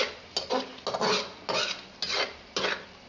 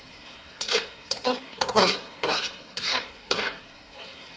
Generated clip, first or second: second